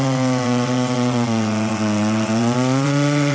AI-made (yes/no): yes